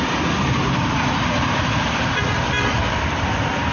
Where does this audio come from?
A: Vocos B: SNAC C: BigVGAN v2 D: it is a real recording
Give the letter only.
C